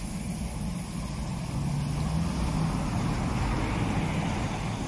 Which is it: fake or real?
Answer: real